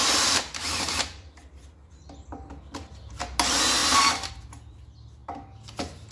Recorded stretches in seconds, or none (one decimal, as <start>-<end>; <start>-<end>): 0.0-6.1